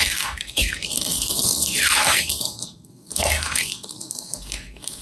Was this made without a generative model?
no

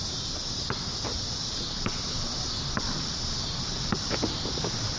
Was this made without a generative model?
yes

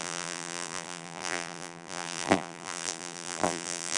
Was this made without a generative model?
no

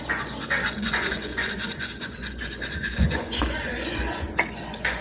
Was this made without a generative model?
no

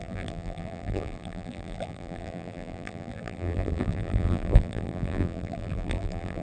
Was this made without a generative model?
no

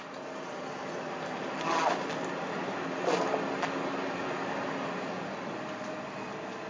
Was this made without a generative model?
yes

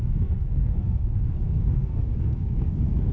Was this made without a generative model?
no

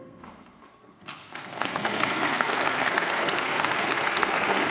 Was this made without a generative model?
no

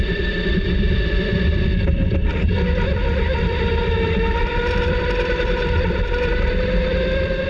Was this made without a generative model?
no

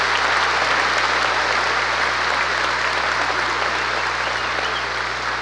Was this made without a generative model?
yes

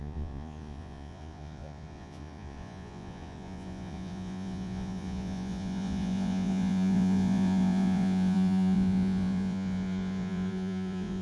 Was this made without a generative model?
no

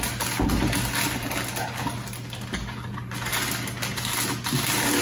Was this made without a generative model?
yes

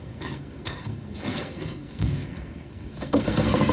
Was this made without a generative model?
no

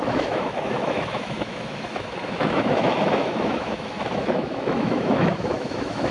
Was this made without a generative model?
no